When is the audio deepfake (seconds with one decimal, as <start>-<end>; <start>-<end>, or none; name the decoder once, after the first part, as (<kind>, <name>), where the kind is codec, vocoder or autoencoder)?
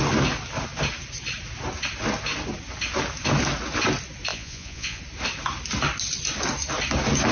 4.3-5.0 (vocoder, Vocos)